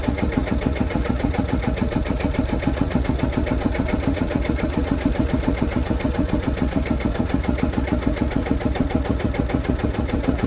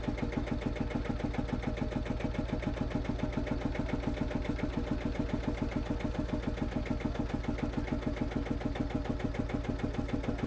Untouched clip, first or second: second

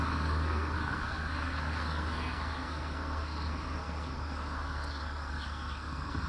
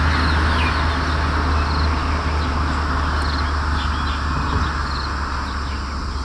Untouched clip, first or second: second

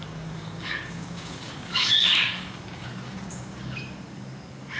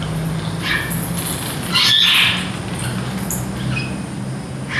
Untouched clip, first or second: second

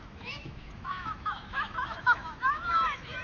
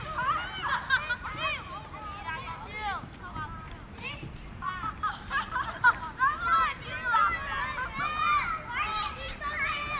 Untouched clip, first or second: second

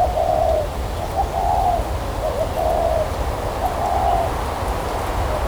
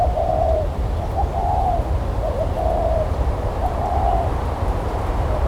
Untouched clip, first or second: first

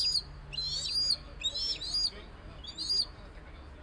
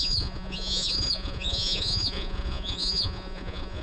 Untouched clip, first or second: first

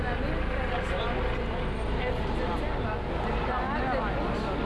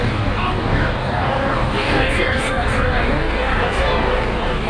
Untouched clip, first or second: first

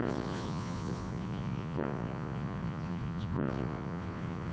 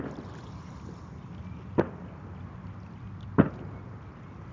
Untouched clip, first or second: second